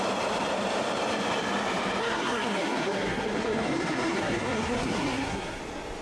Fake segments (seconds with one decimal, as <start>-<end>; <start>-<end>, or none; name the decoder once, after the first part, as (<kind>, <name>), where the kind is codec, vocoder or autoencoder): 2.0-5.6 (codec, SNAC)